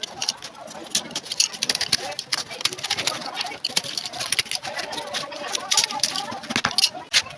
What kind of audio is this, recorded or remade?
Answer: recorded